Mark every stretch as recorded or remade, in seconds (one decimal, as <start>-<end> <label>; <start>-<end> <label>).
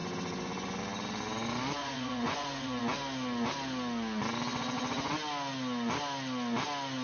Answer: 0.0-0.8 remade; 0.8-1.8 recorded; 1.8-2.8 remade; 2.8-4.5 recorded; 4.5-5.1 remade; 5.1-7.0 recorded